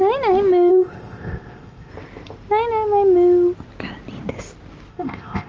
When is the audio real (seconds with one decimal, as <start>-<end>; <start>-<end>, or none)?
0.0-0.7; 1.9-4.9